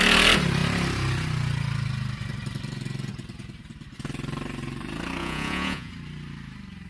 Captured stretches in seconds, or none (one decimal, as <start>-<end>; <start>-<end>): 0.0-5.2; 5.9-6.9

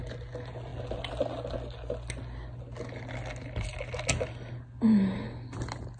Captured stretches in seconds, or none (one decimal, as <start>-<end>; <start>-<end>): 0.0-6.0

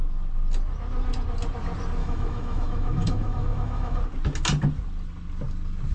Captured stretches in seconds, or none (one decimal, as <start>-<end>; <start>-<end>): 0.0-2.0; 4.0-5.9

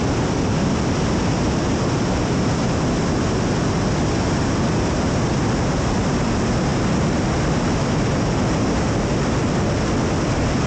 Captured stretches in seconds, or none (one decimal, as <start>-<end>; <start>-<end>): 0.0-10.7

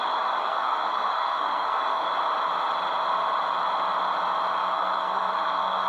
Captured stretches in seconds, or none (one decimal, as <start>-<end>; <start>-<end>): 0.0-0.4; 2.1-4.6